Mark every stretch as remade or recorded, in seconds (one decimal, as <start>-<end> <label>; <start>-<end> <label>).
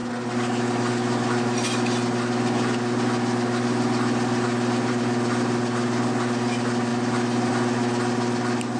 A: 0.0-8.8 recorded